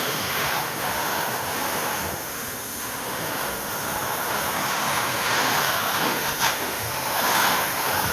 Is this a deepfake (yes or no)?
yes